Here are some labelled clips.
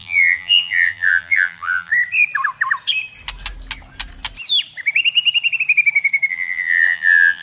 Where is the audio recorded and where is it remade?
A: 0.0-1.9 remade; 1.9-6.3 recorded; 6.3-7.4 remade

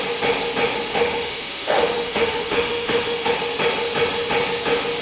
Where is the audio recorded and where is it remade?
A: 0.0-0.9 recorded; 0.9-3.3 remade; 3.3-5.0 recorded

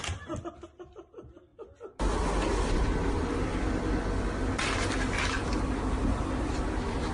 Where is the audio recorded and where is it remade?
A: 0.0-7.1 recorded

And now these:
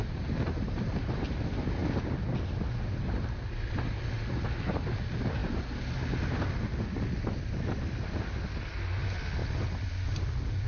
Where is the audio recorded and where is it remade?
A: 0.0-10.7 recorded